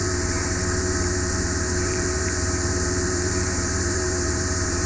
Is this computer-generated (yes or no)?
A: yes